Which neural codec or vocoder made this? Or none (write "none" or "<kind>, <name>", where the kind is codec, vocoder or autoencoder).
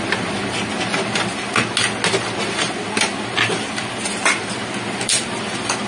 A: none